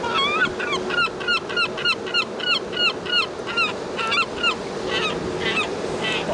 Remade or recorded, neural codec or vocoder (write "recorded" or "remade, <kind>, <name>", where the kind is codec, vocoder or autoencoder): recorded